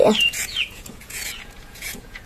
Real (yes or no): no